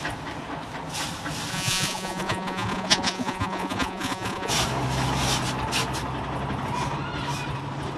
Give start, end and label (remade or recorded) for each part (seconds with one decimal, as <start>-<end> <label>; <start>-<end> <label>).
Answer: 0.0-1.5 recorded; 1.5-4.5 remade; 4.5-8.0 recorded

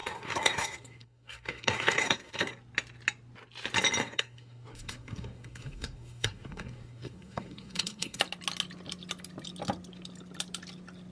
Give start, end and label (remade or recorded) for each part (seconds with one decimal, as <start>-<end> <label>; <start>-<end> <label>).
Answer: 0.0-2.5 remade; 2.5-4.0 recorded; 4.0-8.2 remade; 8.2-11.1 recorded

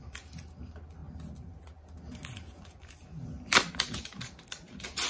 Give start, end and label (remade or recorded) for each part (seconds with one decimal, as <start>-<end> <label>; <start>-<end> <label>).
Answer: 0.0-5.1 recorded

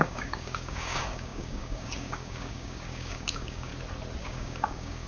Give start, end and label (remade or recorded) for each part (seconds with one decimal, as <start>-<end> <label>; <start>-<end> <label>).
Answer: 0.0-3.7 remade; 3.7-4.2 recorded; 4.2-5.1 remade

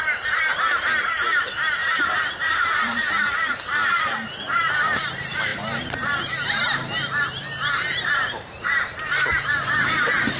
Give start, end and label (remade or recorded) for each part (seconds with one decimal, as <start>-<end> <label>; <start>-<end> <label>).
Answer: 0.0-1.8 remade; 1.8-2.6 recorded; 2.6-3.7 remade; 3.7-4.7 recorded; 4.7-10.4 remade

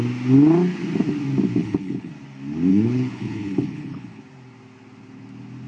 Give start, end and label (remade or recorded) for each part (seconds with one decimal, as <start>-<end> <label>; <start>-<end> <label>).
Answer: 0.0-1.6 recorded; 1.6-2.1 remade; 2.1-2.7 recorded; 2.7-4.2 remade; 4.2-5.7 recorded

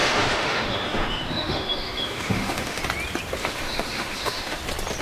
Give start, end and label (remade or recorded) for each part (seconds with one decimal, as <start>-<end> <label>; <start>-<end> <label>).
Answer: 0.0-2.8 remade; 2.8-3.4 recorded; 3.4-4.6 remade; 4.6-5.0 recorded